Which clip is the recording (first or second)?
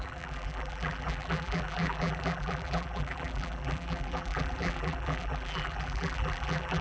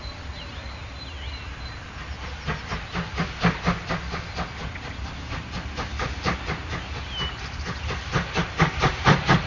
second